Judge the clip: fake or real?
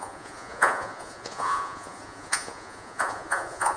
fake